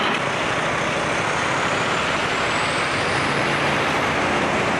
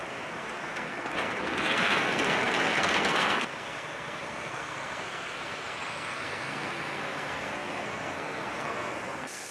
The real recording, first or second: first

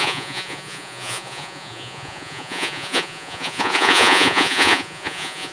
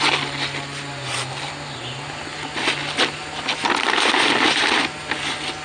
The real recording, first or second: second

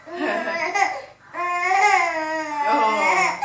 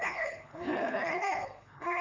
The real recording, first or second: first